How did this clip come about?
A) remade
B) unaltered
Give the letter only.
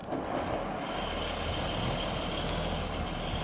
B